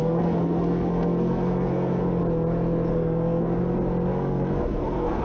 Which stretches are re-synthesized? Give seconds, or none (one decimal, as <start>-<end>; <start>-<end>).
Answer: 0.0-2.2; 2.9-3.6; 4.1-5.2